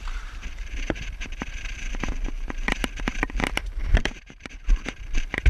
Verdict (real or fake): fake